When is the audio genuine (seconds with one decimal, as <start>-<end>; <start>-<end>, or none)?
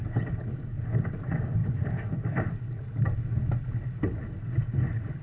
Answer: 0.0-5.2